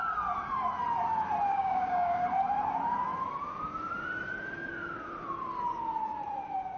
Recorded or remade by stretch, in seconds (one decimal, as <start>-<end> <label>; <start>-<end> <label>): 0.0-1.5 recorded; 1.5-2.2 remade; 2.2-6.8 recorded